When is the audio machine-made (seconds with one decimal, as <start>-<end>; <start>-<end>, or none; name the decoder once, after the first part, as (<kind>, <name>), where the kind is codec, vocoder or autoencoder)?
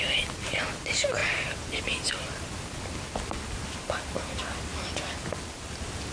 none